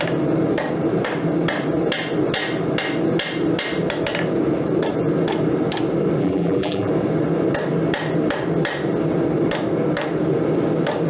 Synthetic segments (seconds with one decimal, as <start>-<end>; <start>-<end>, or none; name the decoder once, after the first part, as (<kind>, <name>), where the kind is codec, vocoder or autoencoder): 6.2-6.9 (vocoder, BigVGAN v2)